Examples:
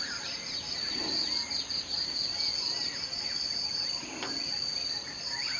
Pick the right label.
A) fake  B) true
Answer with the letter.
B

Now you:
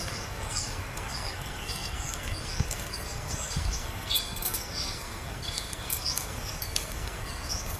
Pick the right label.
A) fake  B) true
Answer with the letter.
A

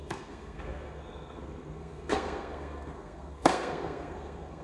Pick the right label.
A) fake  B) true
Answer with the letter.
A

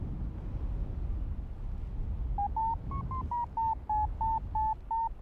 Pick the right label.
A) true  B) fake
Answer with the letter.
A